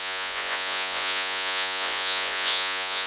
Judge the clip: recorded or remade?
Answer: remade